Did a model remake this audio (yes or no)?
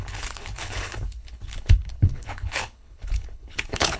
yes